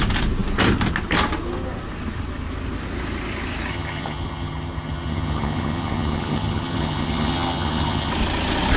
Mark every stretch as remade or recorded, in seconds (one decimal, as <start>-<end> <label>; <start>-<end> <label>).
0.0-3.7 recorded; 3.7-8.1 remade; 8.1-8.8 recorded